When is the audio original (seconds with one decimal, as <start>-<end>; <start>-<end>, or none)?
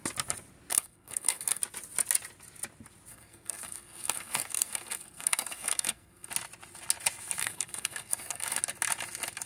0.0-0.7; 1.6-3.1; 6.3-7.4; 8.6-9.5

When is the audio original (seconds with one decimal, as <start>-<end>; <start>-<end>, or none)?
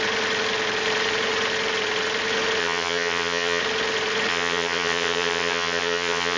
0.0-2.6; 3.6-4.3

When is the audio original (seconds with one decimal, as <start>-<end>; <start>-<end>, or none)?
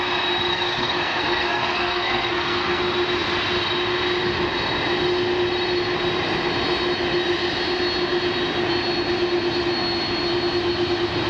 0.0-0.5; 2.8-11.3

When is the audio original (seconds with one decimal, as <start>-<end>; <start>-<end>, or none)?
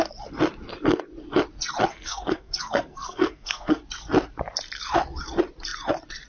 0.0-1.9; 3.8-6.3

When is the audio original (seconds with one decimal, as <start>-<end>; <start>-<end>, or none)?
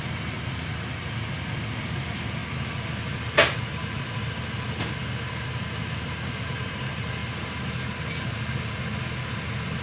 0.0-9.8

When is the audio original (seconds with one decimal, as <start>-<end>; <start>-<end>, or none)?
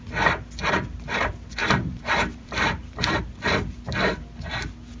0.0-1.6; 3.2-5.0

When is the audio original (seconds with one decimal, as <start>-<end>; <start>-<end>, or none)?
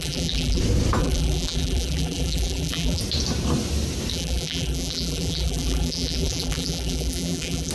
0.6-1.0; 3.0-4.1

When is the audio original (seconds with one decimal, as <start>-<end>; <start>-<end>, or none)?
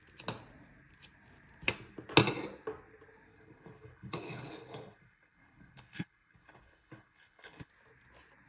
0.0-3.3; 7.7-8.5